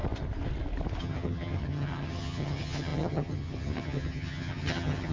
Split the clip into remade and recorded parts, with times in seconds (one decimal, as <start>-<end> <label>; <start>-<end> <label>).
0.0-1.0 recorded; 1.0-5.1 remade